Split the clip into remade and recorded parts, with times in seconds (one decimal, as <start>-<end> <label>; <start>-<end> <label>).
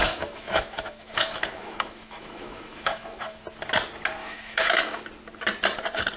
0.0-3.4 remade; 3.4-4.2 recorded; 4.2-5.0 remade; 5.0-6.2 recorded